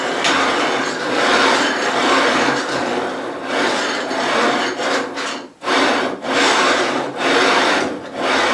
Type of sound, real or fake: fake